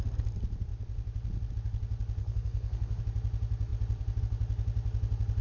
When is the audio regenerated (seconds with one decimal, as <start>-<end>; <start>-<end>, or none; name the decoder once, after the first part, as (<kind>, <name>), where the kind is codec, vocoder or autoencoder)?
2.2-3.0 (codec, SNAC)